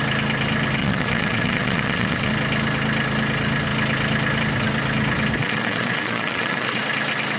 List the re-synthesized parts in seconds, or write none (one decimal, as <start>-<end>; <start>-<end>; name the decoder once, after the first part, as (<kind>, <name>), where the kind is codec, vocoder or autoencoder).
0.8-2.3 (vocoder, Vocos); 5.4-6.8